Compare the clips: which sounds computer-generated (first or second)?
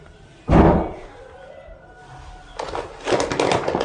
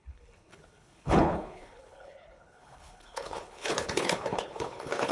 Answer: second